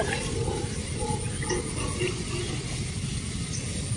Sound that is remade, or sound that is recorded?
recorded